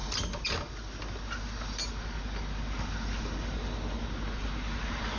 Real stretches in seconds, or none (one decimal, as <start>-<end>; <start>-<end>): 0.0-5.2